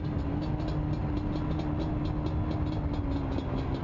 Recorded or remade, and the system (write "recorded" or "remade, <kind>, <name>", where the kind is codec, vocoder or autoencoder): recorded